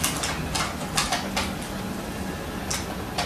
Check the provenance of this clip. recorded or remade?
recorded